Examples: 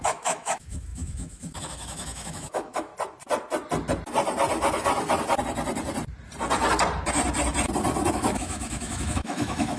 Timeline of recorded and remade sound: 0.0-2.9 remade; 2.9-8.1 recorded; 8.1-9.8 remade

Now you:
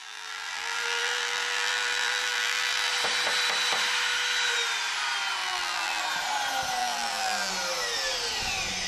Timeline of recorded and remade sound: 0.0-2.9 remade; 2.9-5.4 recorded; 5.4-6.0 remade; 6.0-6.8 recorded; 6.8-7.5 remade; 7.5-8.9 recorded

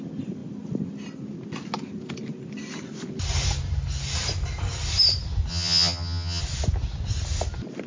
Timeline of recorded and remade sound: 0.0-5.5 recorded; 5.5-6.4 remade; 6.4-7.9 recorded